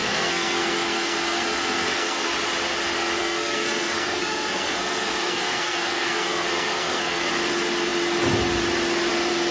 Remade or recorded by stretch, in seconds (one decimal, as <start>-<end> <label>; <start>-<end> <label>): 0.0-2.3 remade; 2.3-3.2 recorded; 3.2-7.3 remade; 7.3-9.5 recorded